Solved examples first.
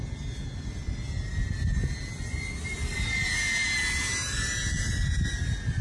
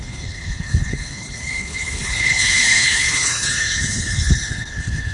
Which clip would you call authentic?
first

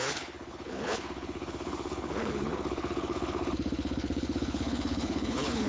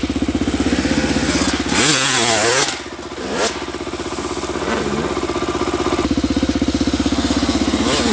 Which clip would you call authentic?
second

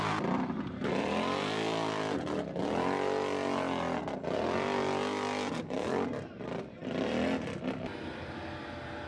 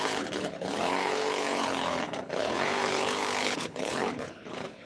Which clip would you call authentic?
first